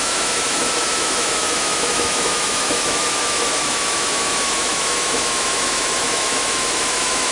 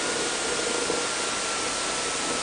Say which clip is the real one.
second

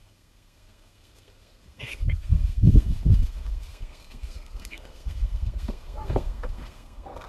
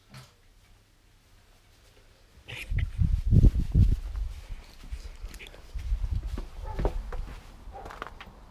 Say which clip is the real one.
second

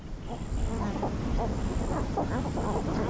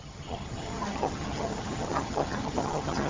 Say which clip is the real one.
first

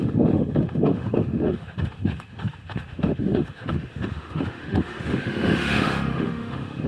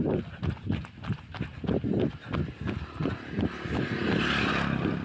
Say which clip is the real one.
second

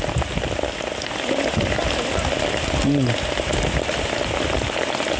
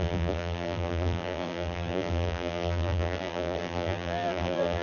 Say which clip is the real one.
first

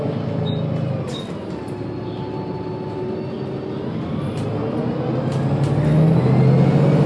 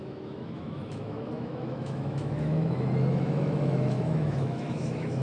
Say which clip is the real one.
first